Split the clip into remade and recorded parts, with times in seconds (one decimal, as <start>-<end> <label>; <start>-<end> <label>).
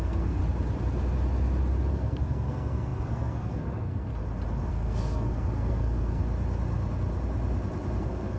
0.0-0.4 remade; 0.4-1.9 recorded; 1.9-4.1 remade; 4.1-4.7 recorded; 4.7-6.2 remade; 6.2-8.0 recorded; 8.0-8.4 remade